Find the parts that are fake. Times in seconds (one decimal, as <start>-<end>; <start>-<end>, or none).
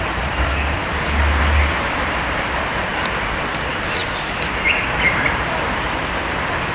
0.0-6.7